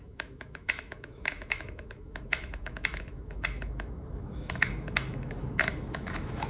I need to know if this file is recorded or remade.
remade